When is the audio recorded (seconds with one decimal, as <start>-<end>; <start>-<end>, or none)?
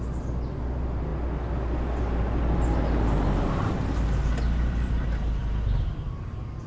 0.0-6.7